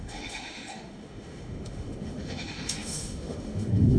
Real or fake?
fake